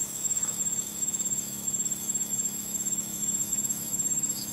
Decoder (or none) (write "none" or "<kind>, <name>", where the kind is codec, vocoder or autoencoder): autoencoder, DAC-VAE